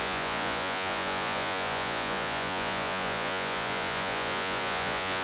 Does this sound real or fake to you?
fake